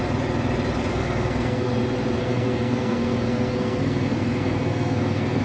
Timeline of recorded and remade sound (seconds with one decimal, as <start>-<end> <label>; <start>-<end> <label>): 0.0-0.9 recorded; 0.9-1.7 remade; 1.7-2.2 recorded; 2.2-5.4 remade